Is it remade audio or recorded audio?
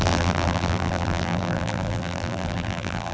remade